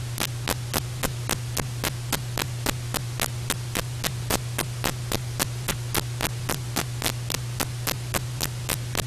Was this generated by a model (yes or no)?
no